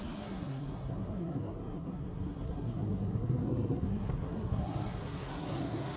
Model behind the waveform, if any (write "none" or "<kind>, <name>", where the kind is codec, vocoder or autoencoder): codec, SNAC